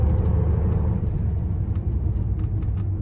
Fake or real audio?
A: real